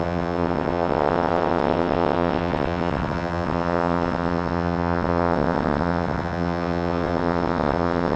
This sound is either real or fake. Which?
fake